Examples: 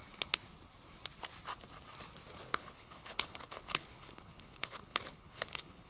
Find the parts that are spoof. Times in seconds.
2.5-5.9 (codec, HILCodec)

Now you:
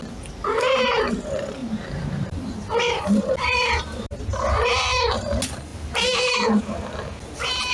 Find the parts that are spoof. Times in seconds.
1.6-4.2 (vocoder, BigVGAN v2); 5.7-6.6

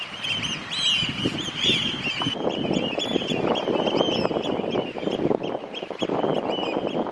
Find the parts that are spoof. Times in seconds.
1.0-3.5 (vocoder, BigVGAN v2); 5.6-6.4

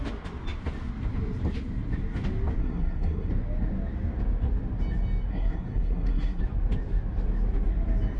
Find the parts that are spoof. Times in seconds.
2.6-3.3 (codec, SNAC); 5.3-6.4

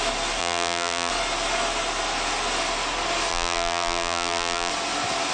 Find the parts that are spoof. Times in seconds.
0.4-1.1 (vocoder, BigVGAN v2); 3.3-4.7